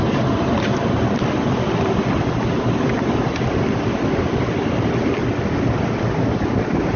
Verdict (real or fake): real